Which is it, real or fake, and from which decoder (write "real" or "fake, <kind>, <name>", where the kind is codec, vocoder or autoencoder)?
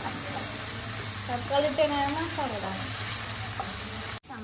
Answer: real